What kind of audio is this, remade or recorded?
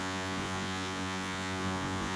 remade